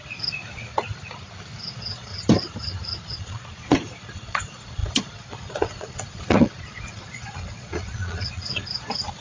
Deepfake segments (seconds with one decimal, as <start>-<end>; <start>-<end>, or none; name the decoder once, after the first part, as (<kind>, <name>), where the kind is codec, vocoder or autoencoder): 0.0-0.7 (vocoder, Vocos); 1.7-2.1; 3.1-9.2